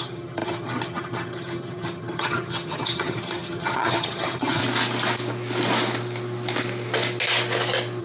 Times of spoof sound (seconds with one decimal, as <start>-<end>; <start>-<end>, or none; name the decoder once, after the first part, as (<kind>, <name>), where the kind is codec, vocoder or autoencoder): 0.0-4.6 (vocoder, HiFi-GAN)